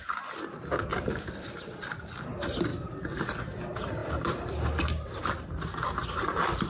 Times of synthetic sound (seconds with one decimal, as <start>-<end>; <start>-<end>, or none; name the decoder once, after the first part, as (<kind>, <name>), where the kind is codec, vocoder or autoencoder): none